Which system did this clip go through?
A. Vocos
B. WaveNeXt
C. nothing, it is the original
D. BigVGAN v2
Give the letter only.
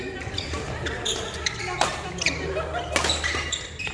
C